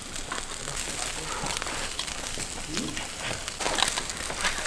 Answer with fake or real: real